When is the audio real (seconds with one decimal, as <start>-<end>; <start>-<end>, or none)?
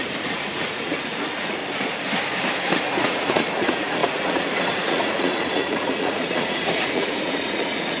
1.6-2.7